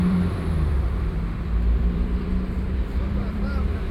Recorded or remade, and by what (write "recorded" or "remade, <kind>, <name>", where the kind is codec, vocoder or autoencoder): remade, vocoder, BigVGAN v2